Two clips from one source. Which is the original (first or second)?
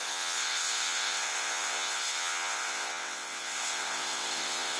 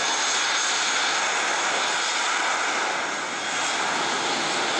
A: second